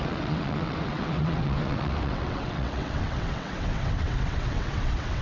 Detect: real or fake fake